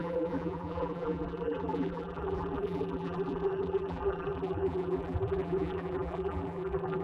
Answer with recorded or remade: remade